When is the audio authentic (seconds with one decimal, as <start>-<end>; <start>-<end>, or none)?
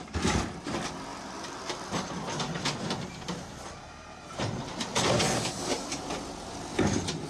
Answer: 0.0-1.1; 3.8-7.3